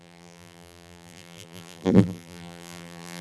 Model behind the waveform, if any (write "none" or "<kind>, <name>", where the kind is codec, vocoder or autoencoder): vocoder, BigVGAN v2